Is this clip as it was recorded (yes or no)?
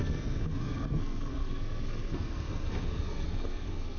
no